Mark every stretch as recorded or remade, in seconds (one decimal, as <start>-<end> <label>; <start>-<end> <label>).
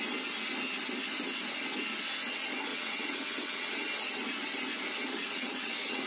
0.0-2.7 recorded; 2.7-3.7 remade; 3.7-5.2 recorded; 5.2-6.1 remade